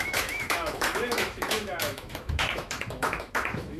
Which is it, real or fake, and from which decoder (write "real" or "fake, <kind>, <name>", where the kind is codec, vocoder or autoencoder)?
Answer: fake, autoencoder, DAC-VAE